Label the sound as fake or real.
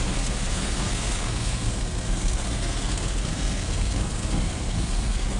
fake